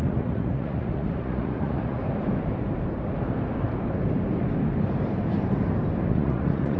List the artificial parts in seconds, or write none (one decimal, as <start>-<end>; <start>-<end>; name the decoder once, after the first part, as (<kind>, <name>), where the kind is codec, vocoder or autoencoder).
0.0-2.0 (vocoder, Vocos); 6.1-6.8